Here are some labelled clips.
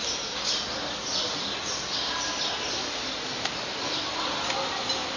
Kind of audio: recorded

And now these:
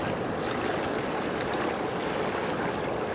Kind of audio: recorded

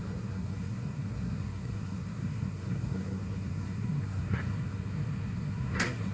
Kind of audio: remade